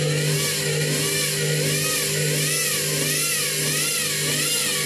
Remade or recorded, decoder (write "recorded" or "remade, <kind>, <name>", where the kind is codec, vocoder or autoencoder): recorded